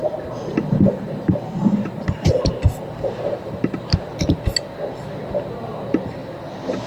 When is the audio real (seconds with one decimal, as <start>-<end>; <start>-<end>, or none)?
4.1-6.9